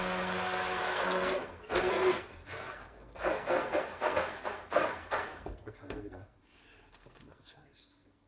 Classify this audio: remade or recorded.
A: remade